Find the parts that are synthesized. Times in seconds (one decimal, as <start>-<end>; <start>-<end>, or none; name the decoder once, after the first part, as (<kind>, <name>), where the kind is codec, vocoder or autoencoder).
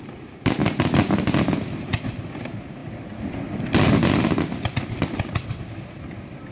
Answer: 0.0-0.6 (vocoder, BigVGAN v2); 1.6-2.8; 4.2-6.5